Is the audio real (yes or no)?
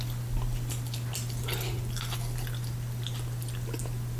yes